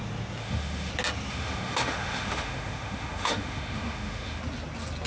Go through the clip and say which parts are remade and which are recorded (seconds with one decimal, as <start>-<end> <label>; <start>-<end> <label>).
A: 0.0-0.4 recorded; 0.4-0.9 remade; 0.9-1.3 recorded; 1.3-4.4 remade; 4.4-5.1 recorded